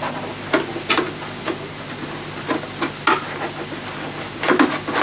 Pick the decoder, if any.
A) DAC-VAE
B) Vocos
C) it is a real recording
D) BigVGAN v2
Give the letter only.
C